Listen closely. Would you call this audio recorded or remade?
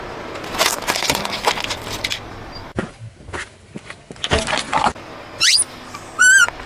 recorded